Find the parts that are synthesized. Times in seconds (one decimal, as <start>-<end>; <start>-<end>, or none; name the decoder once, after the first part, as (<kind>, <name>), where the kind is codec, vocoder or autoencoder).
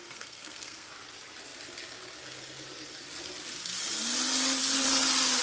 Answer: 0.0-0.9 (codec, SNAC)